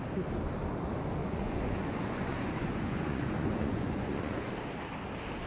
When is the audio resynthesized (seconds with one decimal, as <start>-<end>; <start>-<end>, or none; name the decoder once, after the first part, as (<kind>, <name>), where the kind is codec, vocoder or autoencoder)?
1.2-4.5 (vocoder, Vocos)